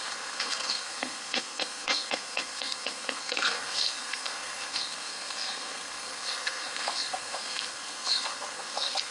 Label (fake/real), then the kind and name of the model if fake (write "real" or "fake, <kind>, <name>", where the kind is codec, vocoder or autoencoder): fake, codec, SNAC